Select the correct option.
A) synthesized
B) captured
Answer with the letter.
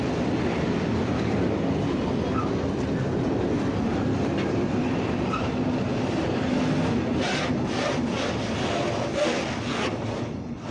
B